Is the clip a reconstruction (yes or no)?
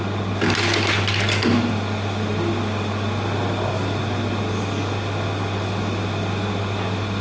no